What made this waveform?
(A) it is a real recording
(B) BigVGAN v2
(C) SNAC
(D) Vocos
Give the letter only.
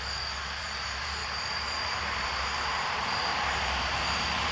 B